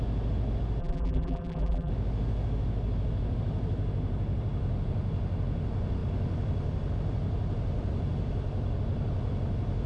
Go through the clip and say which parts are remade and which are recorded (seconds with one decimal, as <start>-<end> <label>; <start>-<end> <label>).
0.0-0.8 recorded; 0.8-1.9 remade; 1.9-9.9 recorded